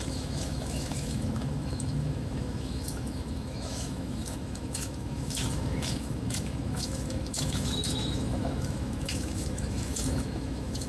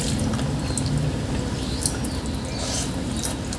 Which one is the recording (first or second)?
second